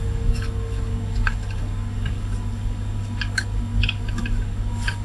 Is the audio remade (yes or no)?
yes